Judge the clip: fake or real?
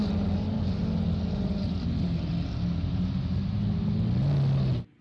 real